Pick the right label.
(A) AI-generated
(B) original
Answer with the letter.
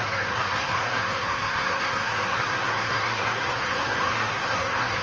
A